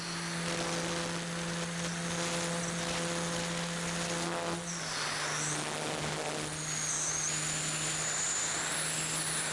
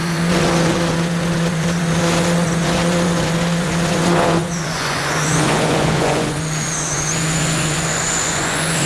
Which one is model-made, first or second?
second